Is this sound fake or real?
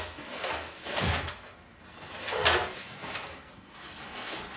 fake